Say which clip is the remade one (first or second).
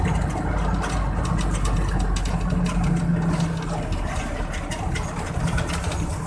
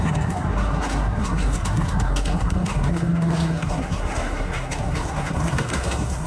second